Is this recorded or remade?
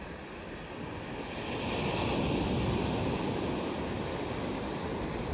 recorded